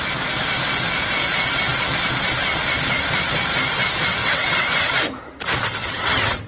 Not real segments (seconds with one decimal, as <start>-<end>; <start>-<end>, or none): 4.2-4.9; 5.8-6.5